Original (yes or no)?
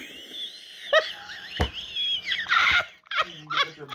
yes